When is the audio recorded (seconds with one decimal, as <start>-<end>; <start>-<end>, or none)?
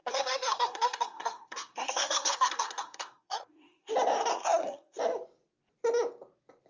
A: 3.9-4.3; 5.0-6.7